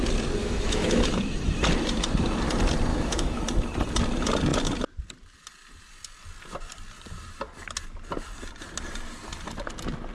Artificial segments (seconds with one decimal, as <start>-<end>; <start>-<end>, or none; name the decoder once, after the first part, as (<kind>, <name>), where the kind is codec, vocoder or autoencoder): 0.4-1.0 (autoencoder, DAC-VAE); 2.9-3.4